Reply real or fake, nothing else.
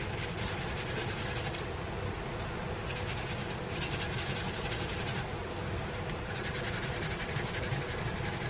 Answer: real